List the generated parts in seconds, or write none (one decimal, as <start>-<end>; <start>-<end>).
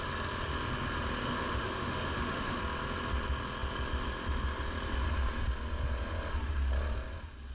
1.2-2.6